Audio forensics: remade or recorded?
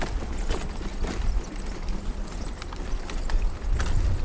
recorded